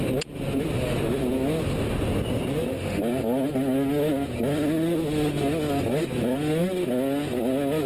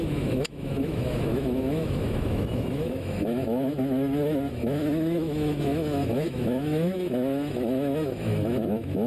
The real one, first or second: first